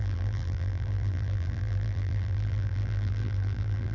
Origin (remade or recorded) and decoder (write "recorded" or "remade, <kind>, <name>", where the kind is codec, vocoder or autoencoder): remade, vocoder, BigVGAN v2